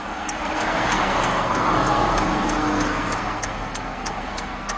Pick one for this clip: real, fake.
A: fake